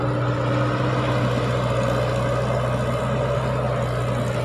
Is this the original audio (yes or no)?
yes